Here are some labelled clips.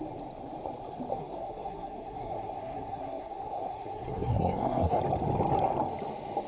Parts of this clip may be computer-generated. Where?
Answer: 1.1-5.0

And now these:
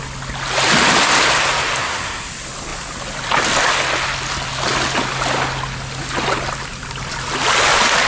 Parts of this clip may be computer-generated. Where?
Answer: 1.8-2.3